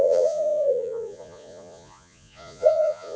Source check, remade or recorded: remade